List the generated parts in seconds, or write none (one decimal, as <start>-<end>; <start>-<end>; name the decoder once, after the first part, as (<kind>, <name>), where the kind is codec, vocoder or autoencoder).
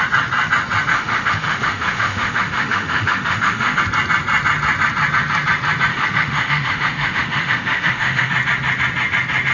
0.9-3.8 (autoencoder, DAC-VAE); 5.9-8.3